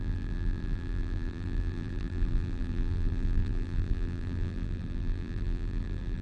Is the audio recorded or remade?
remade